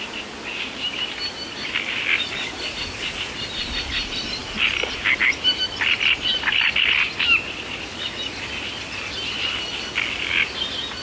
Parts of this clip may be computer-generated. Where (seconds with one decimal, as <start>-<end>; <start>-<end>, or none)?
none